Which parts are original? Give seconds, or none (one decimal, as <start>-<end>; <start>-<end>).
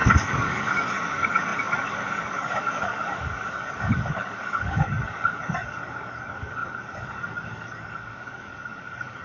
none